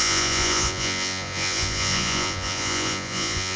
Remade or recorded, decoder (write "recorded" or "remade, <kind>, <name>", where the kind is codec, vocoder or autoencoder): remade, vocoder, Vocos